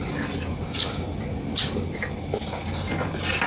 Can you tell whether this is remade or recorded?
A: recorded